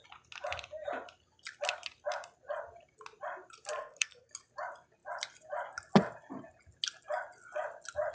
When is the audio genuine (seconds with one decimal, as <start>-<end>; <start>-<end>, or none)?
0.0-3.8; 4.3-8.1